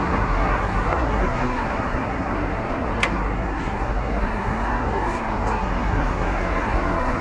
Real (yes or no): no